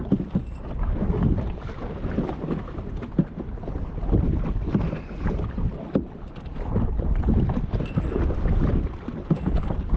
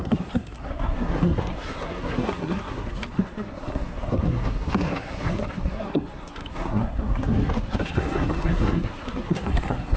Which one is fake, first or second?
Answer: second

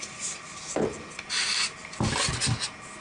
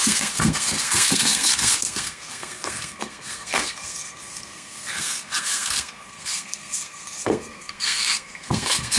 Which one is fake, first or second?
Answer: second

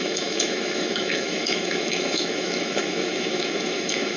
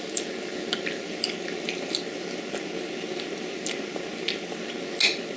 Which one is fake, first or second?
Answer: first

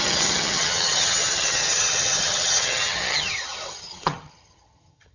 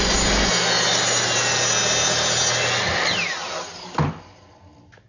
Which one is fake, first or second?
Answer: first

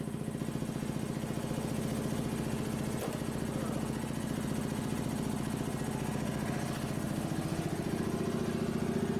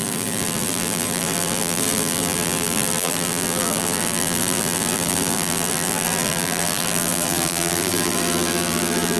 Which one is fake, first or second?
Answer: second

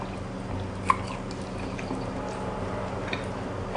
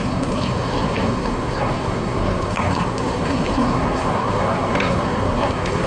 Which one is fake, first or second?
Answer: second